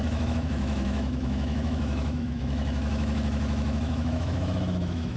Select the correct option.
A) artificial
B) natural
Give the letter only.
A